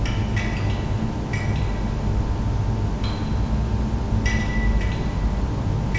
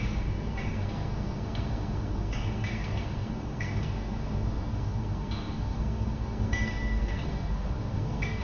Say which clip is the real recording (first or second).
first